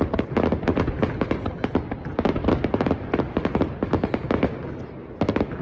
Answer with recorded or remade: recorded